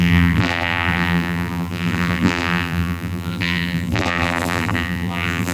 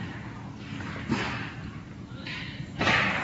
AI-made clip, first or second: first